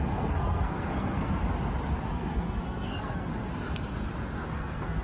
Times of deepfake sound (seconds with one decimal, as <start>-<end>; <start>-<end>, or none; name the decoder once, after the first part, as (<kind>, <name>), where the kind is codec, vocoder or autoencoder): 0.0-1.4 (codec, SNAC); 2.1-3.3; 4.5-5.0